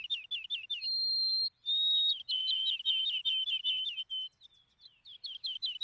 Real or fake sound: real